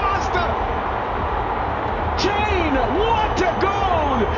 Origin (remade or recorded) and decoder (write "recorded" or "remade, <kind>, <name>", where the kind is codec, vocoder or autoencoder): recorded